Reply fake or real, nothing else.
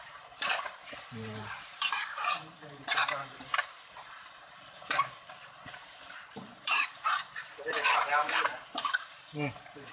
fake